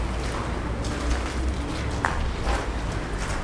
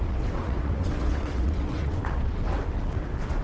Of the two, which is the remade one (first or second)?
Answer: second